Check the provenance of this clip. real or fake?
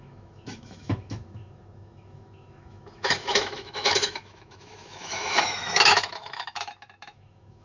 fake